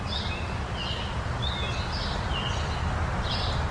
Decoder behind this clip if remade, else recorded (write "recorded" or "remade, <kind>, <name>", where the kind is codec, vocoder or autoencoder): recorded